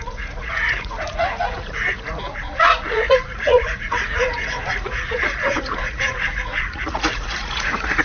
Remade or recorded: remade